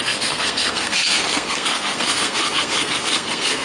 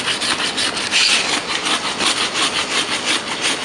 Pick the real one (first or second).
second